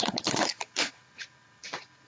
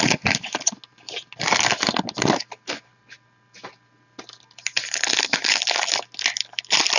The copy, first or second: first